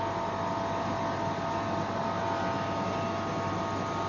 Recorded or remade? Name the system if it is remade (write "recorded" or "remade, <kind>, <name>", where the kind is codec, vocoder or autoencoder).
recorded